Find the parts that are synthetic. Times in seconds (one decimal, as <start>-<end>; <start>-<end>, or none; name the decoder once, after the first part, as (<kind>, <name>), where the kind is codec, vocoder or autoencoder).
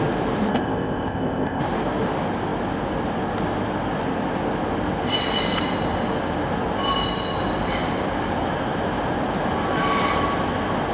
0.5-1.6 (codec, ZipCodec)